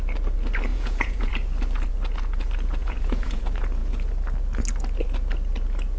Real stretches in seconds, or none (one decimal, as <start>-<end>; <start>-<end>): 0.0-0.7; 1.3-2.8; 3.4-6.0